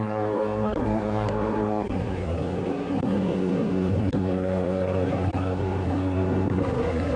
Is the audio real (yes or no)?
no